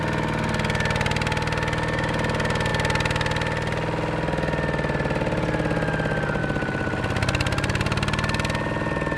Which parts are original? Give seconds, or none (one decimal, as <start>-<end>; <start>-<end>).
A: 0.0-9.2